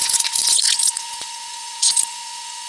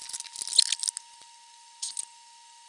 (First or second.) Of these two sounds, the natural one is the second